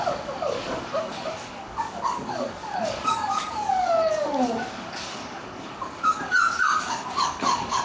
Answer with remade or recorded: remade